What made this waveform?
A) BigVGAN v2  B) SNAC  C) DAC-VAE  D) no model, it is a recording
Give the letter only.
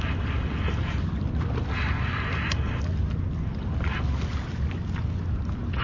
D